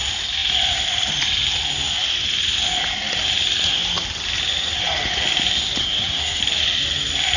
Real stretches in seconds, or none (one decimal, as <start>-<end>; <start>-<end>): 0.0-5.8; 6.4-7.4